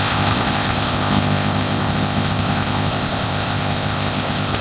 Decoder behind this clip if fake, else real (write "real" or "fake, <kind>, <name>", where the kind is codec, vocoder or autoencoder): fake, codec, ZipCodec